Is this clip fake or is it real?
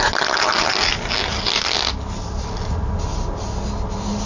real